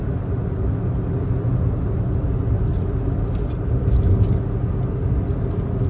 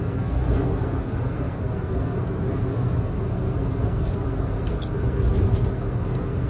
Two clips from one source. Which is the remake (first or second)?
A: second